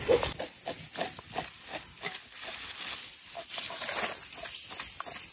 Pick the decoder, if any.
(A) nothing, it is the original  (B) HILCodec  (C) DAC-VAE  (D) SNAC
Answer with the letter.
A